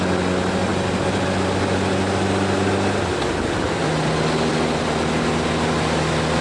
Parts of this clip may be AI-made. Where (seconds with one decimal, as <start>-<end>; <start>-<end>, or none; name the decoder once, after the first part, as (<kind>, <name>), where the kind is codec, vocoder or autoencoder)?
none